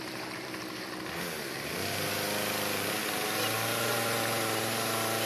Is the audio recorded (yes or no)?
yes